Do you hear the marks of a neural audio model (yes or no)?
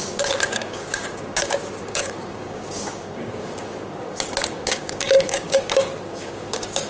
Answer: yes